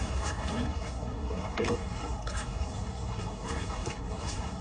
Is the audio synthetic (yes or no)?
yes